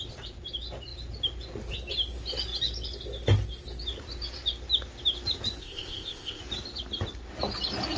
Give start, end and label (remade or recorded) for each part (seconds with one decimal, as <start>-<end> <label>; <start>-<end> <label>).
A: 0.0-5.6 recorded; 5.6-6.4 remade; 6.4-8.0 recorded